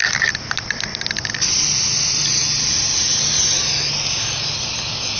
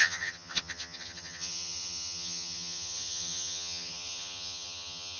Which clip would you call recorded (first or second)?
first